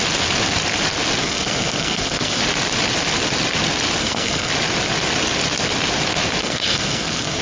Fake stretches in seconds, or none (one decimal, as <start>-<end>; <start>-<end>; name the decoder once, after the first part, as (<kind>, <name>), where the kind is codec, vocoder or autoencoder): 1.2-2.4 (codec, SNAC); 4.0-4.5; 6.4-7.4